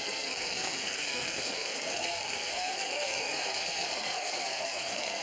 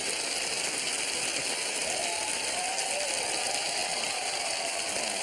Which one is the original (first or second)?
second